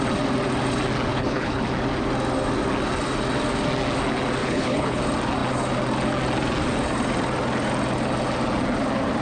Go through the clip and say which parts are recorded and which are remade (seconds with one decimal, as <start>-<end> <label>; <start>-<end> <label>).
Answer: 0.0-1.1 recorded; 1.1-1.6 remade; 1.6-4.4 recorded; 4.4-5.0 remade; 5.0-9.2 recorded